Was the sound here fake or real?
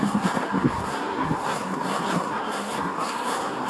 fake